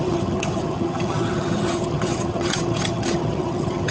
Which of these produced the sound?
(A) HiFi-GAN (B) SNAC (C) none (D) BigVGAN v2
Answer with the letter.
A